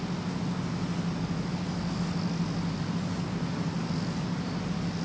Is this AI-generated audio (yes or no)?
no